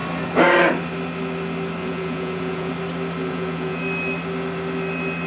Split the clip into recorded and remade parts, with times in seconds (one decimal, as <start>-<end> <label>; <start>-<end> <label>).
0.0-1.8 recorded; 1.8-2.7 remade; 2.7-3.2 recorded; 3.2-3.8 remade; 3.8-5.3 recorded